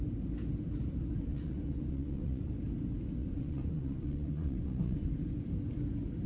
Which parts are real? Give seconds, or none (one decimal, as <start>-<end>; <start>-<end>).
0.0-1.3; 2.5-3.2; 5.1-6.3